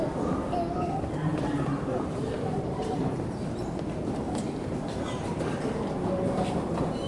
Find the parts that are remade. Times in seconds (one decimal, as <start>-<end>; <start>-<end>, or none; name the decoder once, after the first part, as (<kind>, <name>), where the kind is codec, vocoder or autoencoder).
1.3-5.6 (vocoder, BigVGAN v2)